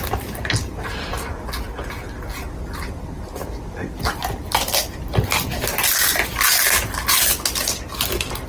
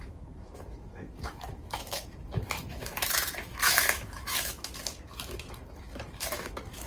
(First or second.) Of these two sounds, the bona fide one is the first